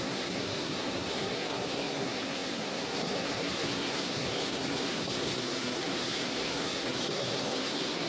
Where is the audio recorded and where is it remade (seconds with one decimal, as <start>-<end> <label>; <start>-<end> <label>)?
0.0-8.1 remade